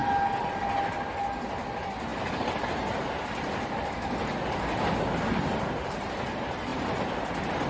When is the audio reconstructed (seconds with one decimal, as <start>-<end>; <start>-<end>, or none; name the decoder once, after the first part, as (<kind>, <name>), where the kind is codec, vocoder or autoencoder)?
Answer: none